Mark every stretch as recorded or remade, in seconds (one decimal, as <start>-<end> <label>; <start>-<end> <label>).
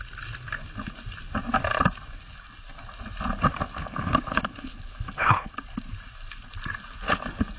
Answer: 0.0-3.8 recorded; 3.8-5.5 remade; 5.5-7.6 recorded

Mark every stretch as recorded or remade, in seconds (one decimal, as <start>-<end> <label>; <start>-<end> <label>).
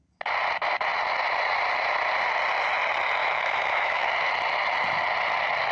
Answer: 0.0-3.2 recorded; 3.2-4.1 remade; 4.1-5.7 recorded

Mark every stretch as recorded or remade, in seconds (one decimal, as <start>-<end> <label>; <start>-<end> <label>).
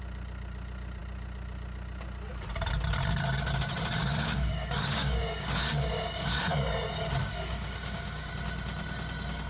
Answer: 0.0-4.0 recorded; 4.0-6.4 remade; 6.4-7.2 recorded; 7.2-8.3 remade; 8.3-9.5 recorded